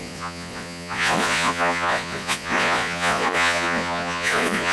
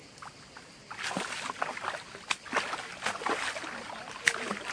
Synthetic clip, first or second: first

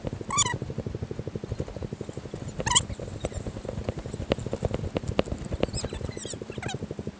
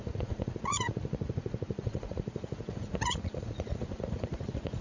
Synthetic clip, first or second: second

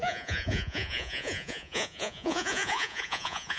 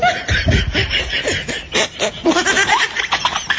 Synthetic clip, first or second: first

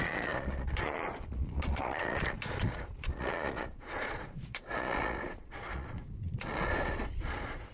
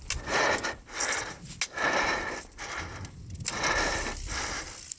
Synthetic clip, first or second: first